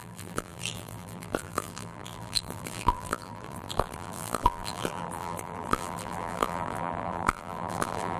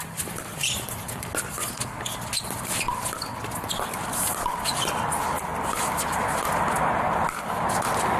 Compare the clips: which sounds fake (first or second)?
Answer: first